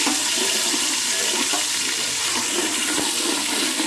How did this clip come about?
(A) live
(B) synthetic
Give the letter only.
A